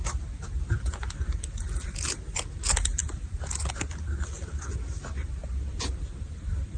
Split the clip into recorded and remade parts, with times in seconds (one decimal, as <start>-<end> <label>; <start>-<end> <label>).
0.0-6.8 recorded